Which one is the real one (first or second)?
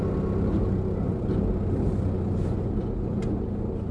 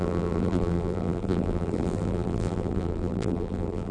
first